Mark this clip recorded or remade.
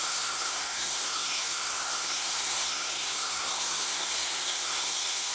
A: remade